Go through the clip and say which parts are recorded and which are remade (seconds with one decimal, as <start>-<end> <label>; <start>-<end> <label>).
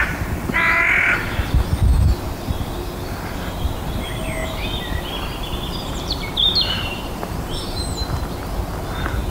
0.0-5.8 recorded; 5.8-7.8 remade; 7.8-9.3 recorded